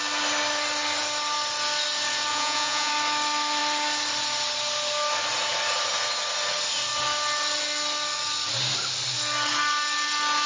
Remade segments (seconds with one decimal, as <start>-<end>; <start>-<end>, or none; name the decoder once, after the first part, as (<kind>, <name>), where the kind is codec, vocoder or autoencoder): 2.3-2.9 (vocoder, Vocos)